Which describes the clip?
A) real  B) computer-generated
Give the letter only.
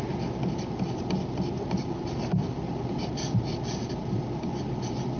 A